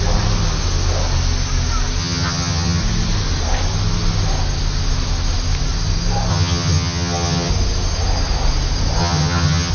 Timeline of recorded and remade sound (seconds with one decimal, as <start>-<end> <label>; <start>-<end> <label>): 0.0-2.0 recorded; 2.0-2.8 remade; 2.8-6.3 recorded; 6.3-7.5 remade; 7.5-9.0 recorded; 9.0-9.7 remade